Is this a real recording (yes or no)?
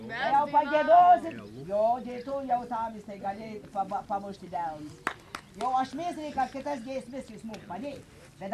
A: yes